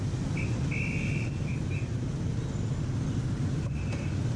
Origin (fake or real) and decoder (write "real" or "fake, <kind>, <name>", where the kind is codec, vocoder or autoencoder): real